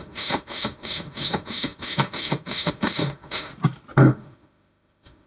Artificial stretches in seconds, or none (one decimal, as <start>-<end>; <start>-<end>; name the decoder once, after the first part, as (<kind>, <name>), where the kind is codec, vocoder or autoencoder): 0.0-3.5 (autoencoder, DAC-VAE); 4.0-5.3